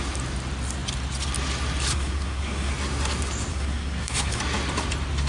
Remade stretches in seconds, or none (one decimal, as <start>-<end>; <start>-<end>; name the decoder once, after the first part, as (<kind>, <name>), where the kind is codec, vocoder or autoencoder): 1.9-2.7 (codec, SNAC); 3.5-4.4